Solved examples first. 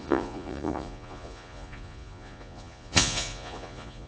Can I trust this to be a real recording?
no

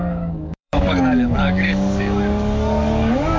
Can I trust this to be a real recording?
no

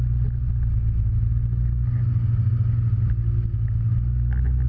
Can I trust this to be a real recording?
yes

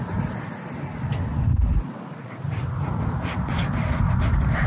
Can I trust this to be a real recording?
yes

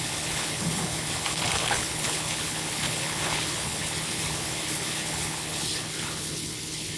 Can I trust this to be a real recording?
no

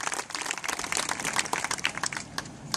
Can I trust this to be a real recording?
yes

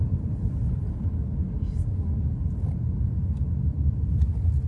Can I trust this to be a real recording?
yes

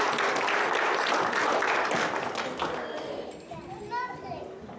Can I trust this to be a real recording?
yes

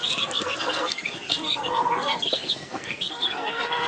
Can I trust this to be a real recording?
no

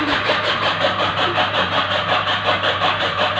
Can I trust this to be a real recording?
no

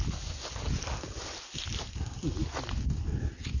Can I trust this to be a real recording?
yes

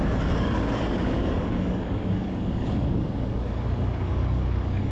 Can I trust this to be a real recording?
no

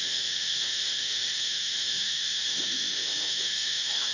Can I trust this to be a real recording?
no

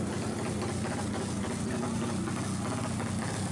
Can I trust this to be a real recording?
yes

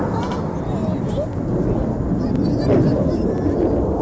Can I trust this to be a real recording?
yes